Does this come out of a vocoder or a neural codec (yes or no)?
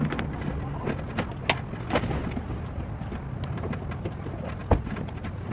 no